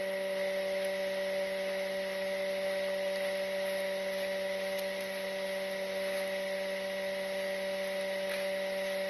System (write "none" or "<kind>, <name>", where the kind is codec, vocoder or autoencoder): none